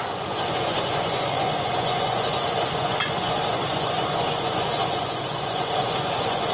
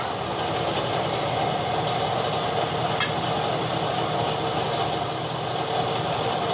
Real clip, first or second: second